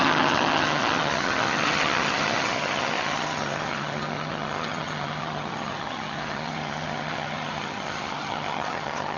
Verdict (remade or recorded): remade